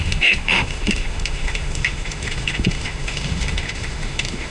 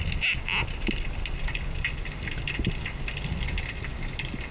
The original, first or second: second